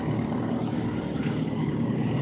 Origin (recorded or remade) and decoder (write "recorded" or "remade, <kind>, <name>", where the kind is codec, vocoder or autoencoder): remade, codec, DAC